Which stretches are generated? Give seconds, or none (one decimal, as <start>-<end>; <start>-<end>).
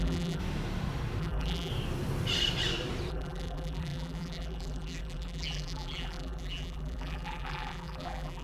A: 0.0-0.4; 1.2-1.7; 3.1-8.4